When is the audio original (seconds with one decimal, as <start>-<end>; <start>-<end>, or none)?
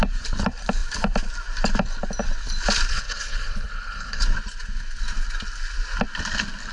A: 0.0-2.9; 4.2-6.7